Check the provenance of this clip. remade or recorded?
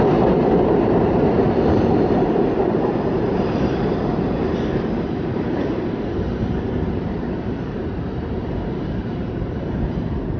remade